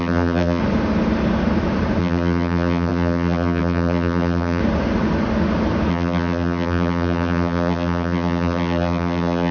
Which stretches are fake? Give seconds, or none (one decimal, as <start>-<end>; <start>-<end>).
0.0-0.6; 2.0-4.6; 5.9-9.5